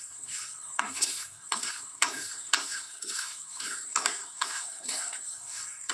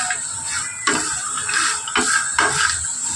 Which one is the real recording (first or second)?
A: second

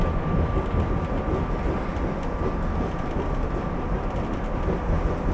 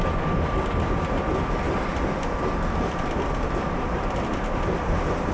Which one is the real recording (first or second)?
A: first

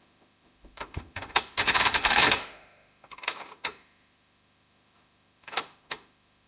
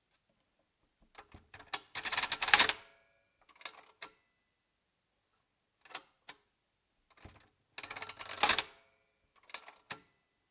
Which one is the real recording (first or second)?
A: second